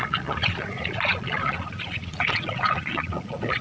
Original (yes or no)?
no